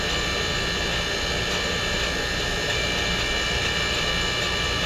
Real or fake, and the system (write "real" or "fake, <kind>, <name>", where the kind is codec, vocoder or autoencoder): real